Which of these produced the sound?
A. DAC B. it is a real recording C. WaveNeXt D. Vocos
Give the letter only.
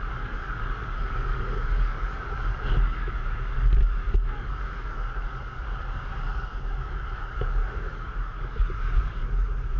A